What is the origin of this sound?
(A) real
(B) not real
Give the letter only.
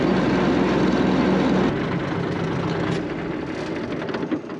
A